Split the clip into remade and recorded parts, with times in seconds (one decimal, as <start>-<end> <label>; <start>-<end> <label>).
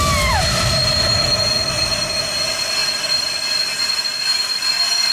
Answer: 0.0-2.8 recorded; 2.8-3.4 remade; 3.4-5.1 recorded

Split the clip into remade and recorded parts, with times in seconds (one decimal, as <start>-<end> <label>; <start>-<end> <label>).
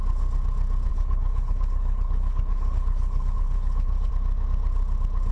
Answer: 0.0-0.9 recorded; 0.9-4.1 remade; 4.1-5.3 recorded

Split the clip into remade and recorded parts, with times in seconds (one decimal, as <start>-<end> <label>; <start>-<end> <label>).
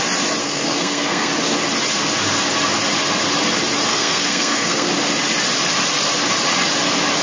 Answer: 0.0-0.4 recorded; 0.4-1.3 remade; 1.3-3.9 recorded; 3.9-4.9 remade; 4.9-7.2 recorded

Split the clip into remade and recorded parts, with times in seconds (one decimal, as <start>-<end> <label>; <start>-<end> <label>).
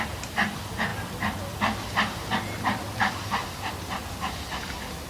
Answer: 0.0-5.1 recorded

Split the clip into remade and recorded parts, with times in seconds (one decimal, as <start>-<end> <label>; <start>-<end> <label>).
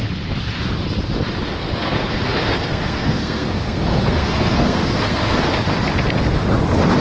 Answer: 0.0-1.5 recorded; 1.5-5.4 remade; 5.4-7.0 recorded